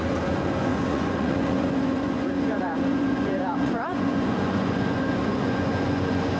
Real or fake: fake